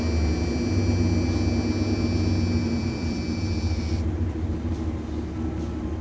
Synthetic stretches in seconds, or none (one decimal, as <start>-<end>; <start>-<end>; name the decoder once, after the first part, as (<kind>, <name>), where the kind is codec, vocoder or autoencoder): 2.6-3.8 (vocoder, BigVGAN v2)

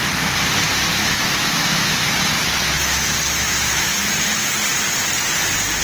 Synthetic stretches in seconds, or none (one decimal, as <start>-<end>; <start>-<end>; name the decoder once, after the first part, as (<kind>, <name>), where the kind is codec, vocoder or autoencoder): 0.9-4.4 (autoencoder, DAC-VAE)

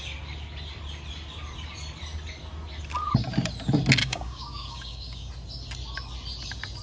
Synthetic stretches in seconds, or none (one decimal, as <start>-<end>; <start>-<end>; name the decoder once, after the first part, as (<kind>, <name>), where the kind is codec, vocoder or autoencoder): 4.0-5.3 (codec, DAC)